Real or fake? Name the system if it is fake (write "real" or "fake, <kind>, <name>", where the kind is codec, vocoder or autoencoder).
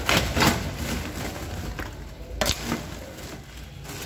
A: real